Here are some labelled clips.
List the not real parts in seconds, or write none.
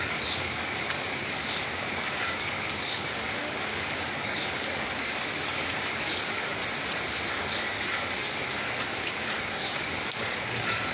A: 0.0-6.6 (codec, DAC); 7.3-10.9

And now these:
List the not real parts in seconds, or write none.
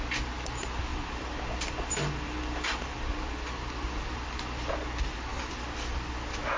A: 0.9-4.7 (vocoder, BigVGAN v2); 5.3-6.1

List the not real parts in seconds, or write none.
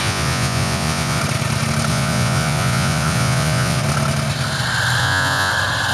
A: 0.0-1.2 (vocoder, Vocos); 1.9-3.8; 5.0-5.5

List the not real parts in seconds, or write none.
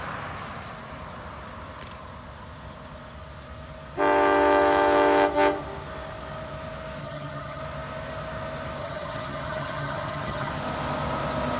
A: 7.0-7.6 (vocoder, HiFi-GAN); 8.8-10.5